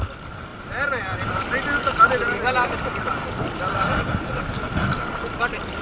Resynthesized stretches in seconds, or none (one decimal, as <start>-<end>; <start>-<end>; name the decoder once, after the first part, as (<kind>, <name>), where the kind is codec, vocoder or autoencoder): none